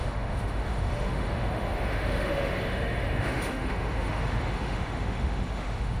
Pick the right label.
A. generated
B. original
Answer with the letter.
A